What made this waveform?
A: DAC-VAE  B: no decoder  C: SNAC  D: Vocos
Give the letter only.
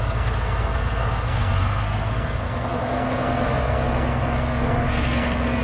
C